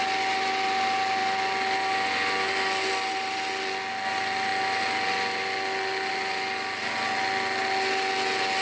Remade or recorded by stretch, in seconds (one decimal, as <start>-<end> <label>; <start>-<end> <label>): 0.0-8.6 recorded